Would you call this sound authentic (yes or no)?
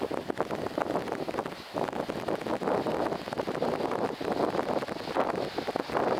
yes